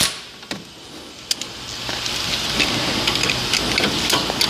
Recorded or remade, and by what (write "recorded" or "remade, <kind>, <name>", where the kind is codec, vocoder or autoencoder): recorded